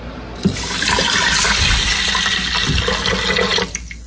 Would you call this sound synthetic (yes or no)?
no